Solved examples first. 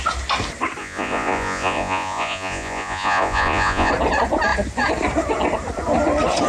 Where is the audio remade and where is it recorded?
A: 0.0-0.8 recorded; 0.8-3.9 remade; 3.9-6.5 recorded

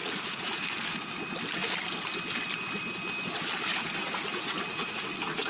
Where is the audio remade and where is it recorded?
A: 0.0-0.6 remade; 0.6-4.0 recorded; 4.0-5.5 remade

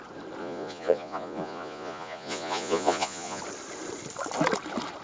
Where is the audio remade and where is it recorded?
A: 0.0-0.4 recorded; 0.4-3.4 remade; 3.4-5.0 recorded

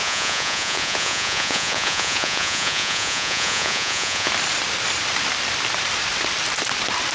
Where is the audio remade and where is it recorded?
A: 0.0-4.3 remade; 4.3-7.1 recorded

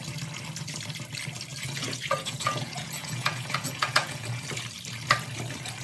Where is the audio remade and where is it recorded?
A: 0.0-1.5 recorded; 1.5-4.4 remade; 4.4-5.8 recorded